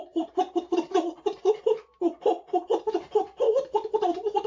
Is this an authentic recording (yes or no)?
no